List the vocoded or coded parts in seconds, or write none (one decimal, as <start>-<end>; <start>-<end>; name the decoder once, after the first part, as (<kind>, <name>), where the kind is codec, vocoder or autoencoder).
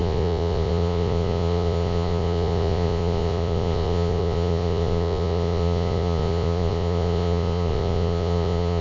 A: 0.0-8.8 (vocoder, Vocos)